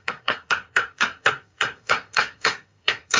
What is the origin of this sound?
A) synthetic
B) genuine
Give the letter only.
A